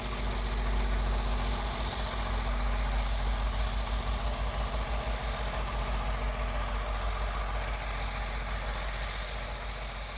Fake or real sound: real